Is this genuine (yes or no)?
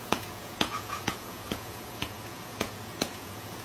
no